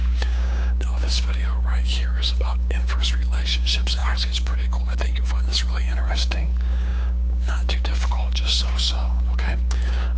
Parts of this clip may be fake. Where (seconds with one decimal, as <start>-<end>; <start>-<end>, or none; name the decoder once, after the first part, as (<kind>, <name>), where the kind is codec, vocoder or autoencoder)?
0.0-10.2 (codec, DAC)